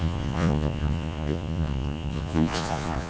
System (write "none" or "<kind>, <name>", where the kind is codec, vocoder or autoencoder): vocoder, Vocos